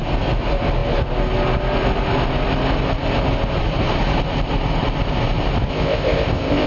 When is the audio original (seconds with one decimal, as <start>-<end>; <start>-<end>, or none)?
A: 0.0-5.7